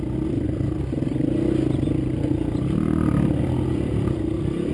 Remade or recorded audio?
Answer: recorded